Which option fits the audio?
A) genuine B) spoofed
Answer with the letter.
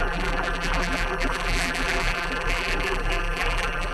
B